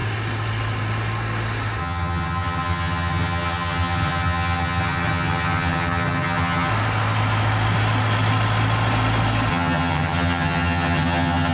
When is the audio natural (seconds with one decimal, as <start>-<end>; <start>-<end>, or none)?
0.0-1.8; 6.7-9.5

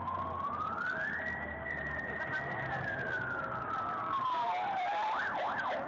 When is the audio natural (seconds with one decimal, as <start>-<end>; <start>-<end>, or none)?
0.0-4.0; 4.5-5.9

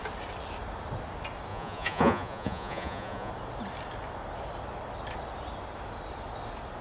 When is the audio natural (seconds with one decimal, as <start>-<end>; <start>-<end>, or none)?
0.0-1.5; 3.3-6.8

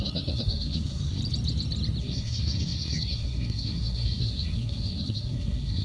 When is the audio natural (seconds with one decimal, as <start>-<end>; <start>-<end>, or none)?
1.2-2.0

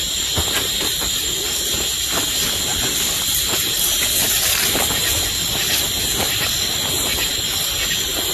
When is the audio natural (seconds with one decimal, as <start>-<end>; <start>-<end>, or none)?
0.0-8.3

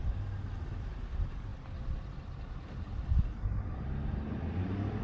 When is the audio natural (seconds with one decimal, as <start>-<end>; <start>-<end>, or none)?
0.0-5.0

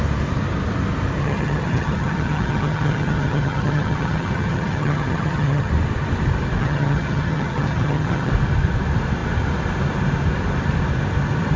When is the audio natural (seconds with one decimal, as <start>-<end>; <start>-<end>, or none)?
0.0-1.2; 5.7-6.6; 8.3-11.6